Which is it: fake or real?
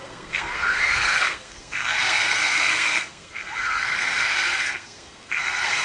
fake